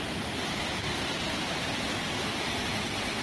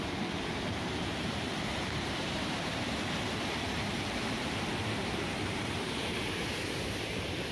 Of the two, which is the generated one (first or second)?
second